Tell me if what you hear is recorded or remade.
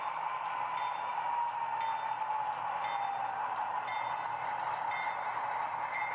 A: recorded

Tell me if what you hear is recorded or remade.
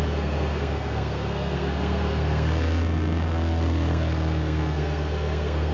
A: remade